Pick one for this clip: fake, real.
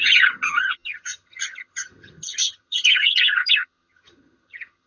fake